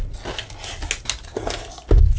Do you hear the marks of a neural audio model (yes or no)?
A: no